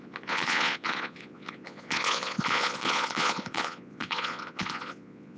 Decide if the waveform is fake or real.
fake